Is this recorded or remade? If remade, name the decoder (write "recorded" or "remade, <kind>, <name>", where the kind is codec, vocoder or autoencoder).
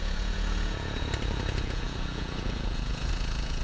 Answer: remade, vocoder, Vocos